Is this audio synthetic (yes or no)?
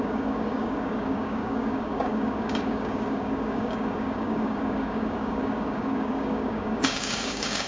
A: yes